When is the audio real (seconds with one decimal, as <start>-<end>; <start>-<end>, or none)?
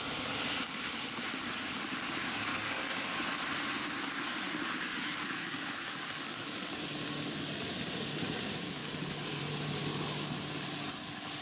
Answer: 0.0-2.5; 3.2-4.9; 6.7-8.8; 9.4-11.4